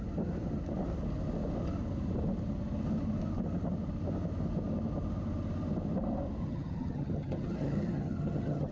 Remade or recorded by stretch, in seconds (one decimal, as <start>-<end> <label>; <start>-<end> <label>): 0.0-6.4 recorded; 6.4-8.7 remade